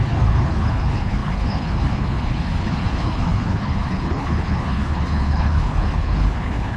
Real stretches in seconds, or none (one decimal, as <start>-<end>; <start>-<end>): none